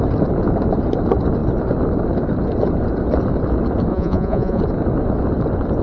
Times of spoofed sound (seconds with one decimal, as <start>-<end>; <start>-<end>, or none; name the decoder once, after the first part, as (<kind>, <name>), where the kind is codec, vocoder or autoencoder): 3.9-4.6 (vocoder, Vocos)